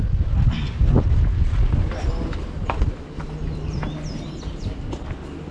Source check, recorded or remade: recorded